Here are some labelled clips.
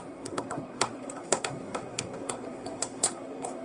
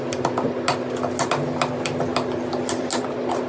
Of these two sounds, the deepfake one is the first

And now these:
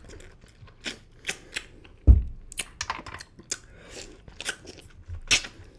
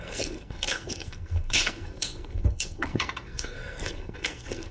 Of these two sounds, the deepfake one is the second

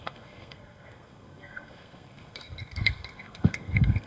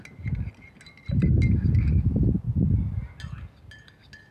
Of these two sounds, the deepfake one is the first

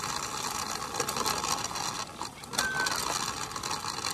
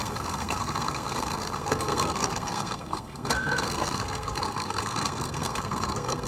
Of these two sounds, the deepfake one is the second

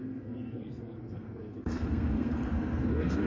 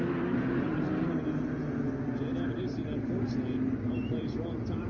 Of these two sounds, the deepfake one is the first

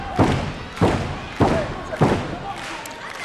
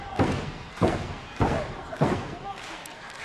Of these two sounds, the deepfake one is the second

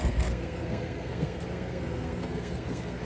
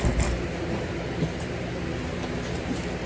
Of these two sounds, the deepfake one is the first